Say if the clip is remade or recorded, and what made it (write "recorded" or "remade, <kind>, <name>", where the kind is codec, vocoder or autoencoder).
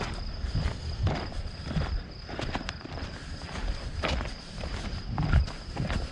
recorded